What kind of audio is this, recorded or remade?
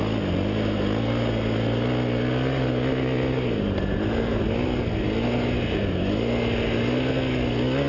recorded